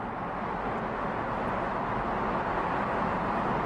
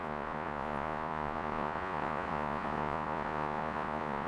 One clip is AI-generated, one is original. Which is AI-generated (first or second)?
second